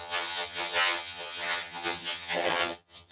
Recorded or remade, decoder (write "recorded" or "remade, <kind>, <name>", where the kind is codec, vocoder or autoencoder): remade, vocoder, HiFi-GAN